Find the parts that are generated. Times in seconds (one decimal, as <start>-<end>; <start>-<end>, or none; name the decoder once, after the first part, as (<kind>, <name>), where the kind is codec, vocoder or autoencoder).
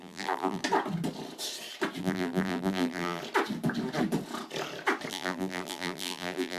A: 0.0-0.6 (vocoder, BigVGAN v2); 2.0-3.2; 5.1-6.6